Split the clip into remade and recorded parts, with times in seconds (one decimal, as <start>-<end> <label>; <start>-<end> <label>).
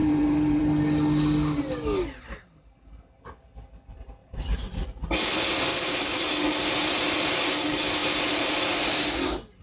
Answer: 0.0-0.6 remade; 0.6-4.2 recorded; 4.2-4.8 remade; 4.8-5.7 recorded; 5.7-6.3 remade; 6.3-9.6 recorded